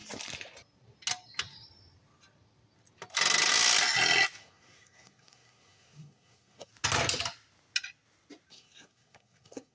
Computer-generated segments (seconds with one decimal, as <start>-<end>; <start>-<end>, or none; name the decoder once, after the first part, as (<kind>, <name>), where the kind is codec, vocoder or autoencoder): 4.4-6.7 (codec, SNAC); 8.5-9.7